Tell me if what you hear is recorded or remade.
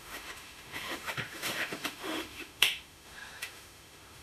remade